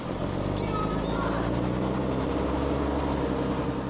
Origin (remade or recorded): recorded